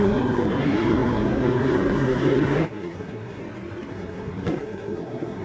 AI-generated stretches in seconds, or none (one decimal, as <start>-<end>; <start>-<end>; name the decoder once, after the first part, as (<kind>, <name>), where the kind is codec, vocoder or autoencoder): 0.0-3.4 (codec, SNAC); 3.9-5.4